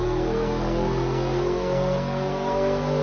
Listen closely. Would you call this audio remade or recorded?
remade